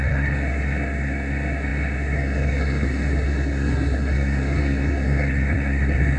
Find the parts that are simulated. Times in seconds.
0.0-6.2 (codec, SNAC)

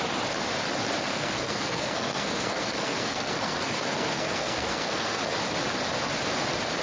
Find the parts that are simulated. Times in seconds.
1.1-5.2 (codec, SNAC)

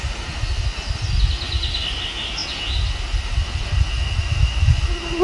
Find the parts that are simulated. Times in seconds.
none